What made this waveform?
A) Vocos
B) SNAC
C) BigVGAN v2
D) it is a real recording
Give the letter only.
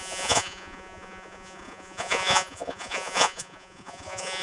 A